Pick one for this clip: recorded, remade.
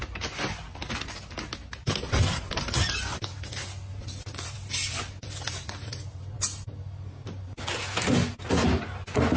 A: recorded